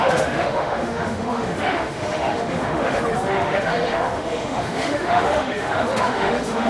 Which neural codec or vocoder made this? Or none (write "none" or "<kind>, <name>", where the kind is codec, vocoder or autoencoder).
autoencoder, DAC-VAE